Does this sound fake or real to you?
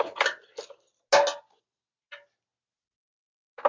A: real